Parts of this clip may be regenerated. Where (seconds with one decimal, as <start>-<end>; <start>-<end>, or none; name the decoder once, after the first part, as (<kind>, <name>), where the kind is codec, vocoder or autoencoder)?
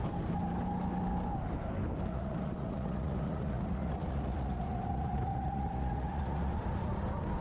2.1-6.5 (vocoder, Vocos)